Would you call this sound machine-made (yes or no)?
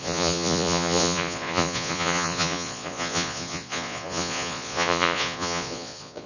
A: yes